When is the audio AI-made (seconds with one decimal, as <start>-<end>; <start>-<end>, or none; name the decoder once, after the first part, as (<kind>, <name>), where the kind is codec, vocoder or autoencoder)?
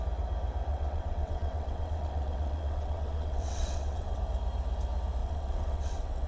0.7-4.2 (vocoder, WaveNeXt); 5.2-6.3